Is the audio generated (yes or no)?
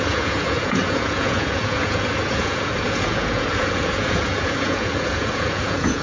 yes